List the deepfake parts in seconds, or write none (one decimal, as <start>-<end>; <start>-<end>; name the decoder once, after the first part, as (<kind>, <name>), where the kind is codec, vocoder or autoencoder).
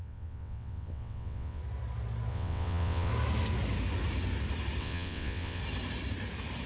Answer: 0.0-1.6 (vocoder, WaveNeXt); 2.3-3.1; 4.8-5.6